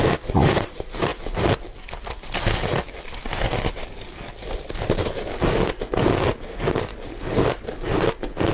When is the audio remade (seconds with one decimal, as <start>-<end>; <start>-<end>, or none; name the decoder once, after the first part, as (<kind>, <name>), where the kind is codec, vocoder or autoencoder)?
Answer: none